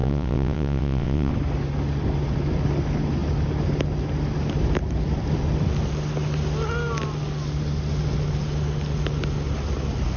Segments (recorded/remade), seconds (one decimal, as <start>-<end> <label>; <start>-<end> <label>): 0.0-1.3 remade; 1.3-10.2 recorded